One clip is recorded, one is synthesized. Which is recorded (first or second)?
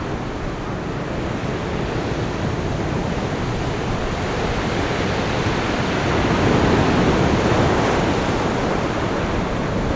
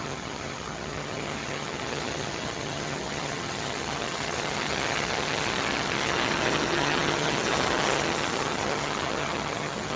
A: first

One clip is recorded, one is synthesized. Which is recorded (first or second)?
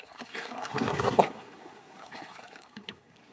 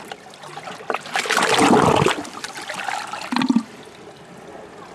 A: second